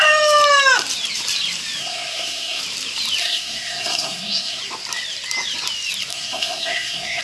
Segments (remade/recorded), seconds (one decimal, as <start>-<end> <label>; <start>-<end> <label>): 0.0-1.8 recorded; 1.8-2.6 remade; 2.6-3.2 recorded; 3.2-4.6 remade; 4.6-6.1 recorded; 6.1-7.2 remade